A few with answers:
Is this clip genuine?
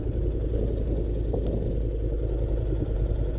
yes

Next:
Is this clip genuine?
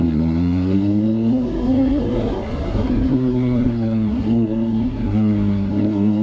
no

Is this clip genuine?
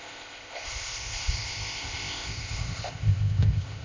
no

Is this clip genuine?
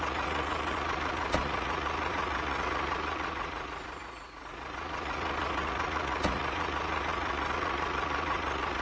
no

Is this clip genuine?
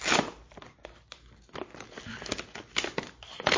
yes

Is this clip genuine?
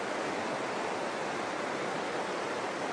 yes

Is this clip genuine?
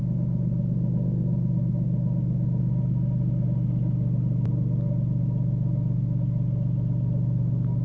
yes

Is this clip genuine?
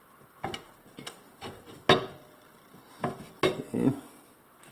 yes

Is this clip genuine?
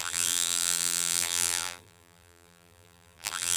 no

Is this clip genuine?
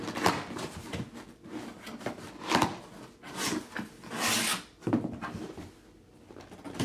yes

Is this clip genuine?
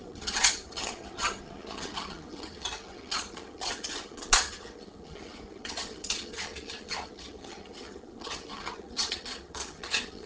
no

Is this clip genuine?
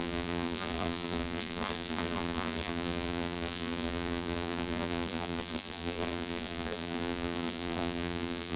no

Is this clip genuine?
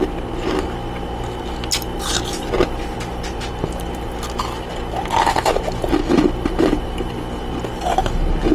yes